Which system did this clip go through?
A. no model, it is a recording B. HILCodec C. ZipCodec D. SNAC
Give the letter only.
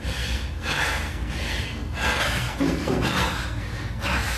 D